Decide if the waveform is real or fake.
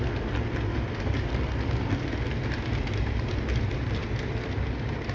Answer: real